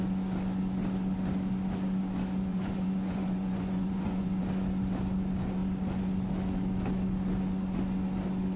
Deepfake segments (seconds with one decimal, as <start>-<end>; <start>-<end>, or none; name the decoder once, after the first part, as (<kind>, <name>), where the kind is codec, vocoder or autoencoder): 2.5-4.4 (vocoder, Vocos)